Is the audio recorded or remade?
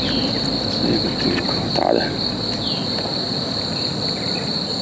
recorded